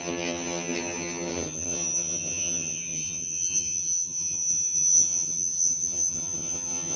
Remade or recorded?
remade